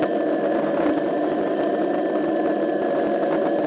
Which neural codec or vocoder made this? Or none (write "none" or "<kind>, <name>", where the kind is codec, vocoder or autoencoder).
none